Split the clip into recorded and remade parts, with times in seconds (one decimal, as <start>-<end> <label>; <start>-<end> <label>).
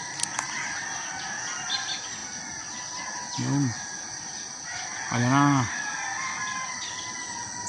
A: 0.0-7.7 recorded